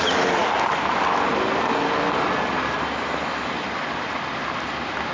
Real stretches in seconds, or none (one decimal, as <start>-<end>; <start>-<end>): 0.0-5.1